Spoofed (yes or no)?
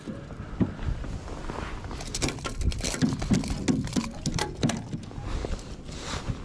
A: no